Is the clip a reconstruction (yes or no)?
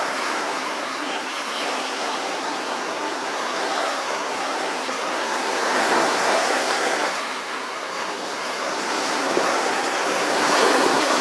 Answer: yes